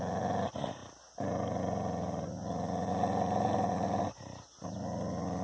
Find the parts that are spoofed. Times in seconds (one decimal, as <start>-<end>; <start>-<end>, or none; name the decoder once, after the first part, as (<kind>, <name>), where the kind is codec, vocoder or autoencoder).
none